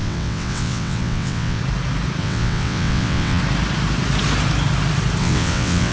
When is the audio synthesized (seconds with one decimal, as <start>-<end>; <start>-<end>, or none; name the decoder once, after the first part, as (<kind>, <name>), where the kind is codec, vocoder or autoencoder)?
0.0-1.6 (vocoder, WaveNeXt); 2.2-3.4; 5.2-5.9